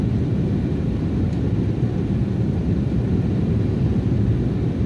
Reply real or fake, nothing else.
fake